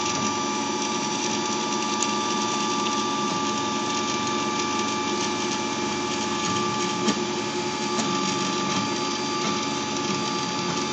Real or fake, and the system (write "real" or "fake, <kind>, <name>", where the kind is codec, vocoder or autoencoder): real